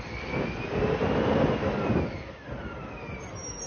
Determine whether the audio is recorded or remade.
recorded